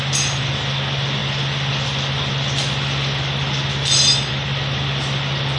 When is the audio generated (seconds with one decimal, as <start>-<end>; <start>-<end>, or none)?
none